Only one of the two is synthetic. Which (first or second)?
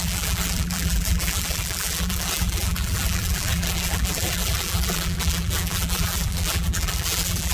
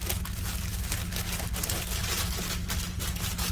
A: first